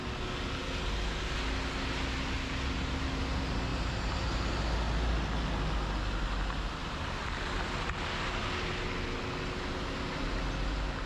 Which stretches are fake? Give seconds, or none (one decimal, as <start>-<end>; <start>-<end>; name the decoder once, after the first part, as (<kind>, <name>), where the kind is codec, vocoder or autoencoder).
3.7-4.4 (vocoder, BigVGAN v2)